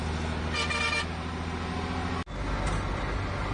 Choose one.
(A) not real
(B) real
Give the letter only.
B